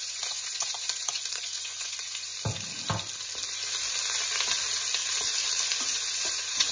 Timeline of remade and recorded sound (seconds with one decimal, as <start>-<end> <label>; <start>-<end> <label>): 0.0-2.3 remade; 2.3-6.3 recorded; 6.3-6.7 remade